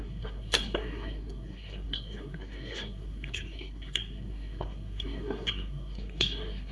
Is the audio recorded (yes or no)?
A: no